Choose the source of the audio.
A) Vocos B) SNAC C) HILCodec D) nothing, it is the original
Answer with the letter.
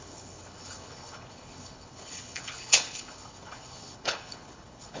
C